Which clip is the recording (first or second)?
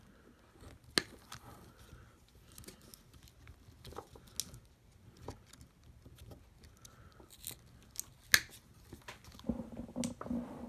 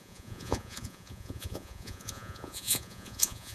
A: first